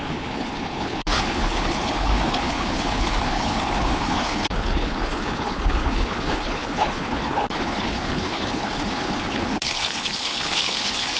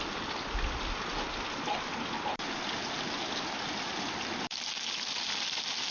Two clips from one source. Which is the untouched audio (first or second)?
second